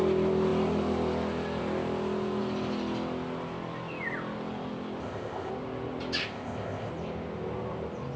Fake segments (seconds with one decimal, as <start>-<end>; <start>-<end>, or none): 5.0-5.5; 6.2-6.9